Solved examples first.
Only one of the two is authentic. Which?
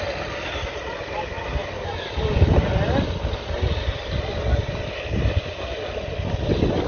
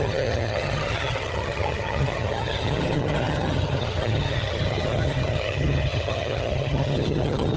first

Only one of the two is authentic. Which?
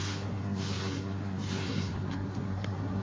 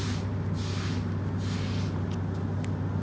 second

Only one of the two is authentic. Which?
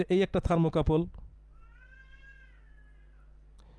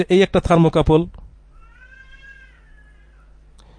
first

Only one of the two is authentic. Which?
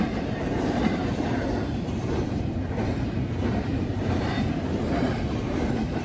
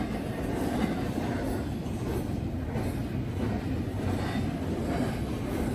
second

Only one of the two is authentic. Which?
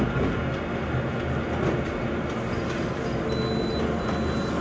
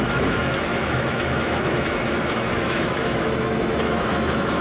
first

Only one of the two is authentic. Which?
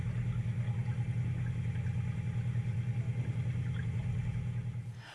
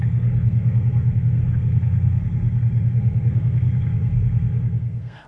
first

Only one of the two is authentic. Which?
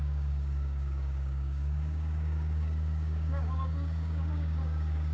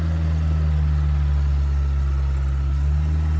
second